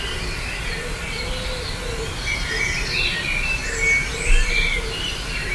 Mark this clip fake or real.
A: real